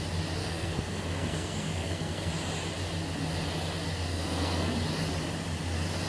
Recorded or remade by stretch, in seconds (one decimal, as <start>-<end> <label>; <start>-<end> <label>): 0.0-0.4 recorded; 0.4-2.3 remade; 2.3-4.1 recorded; 4.1-4.7 remade; 4.7-6.1 recorded